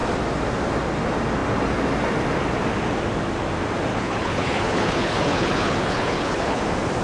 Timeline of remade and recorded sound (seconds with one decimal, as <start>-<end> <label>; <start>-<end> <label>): 0.0-3.9 recorded; 3.9-6.6 remade; 6.6-7.0 recorded